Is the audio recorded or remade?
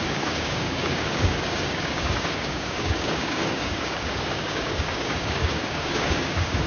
remade